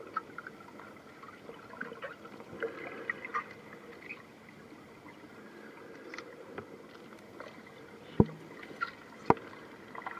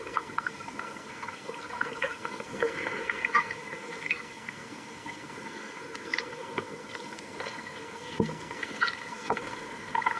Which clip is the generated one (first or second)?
second